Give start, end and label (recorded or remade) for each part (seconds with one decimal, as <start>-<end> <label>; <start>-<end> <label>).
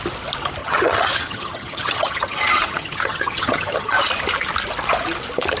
0.0-0.6 recorded; 0.6-4.0 remade; 4.0-5.6 recorded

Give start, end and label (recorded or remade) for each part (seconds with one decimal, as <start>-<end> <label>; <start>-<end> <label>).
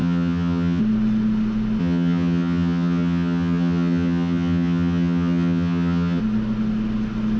0.0-0.8 remade; 0.8-1.8 recorded; 1.8-6.2 remade; 6.2-7.4 recorded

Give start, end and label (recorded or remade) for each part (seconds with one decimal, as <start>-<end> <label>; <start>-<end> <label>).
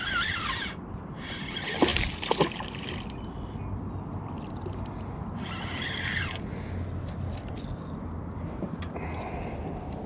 0.0-10.1 recorded